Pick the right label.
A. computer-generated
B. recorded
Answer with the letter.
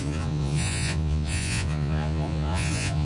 A